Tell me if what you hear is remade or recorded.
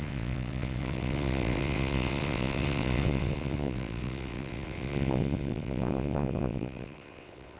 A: remade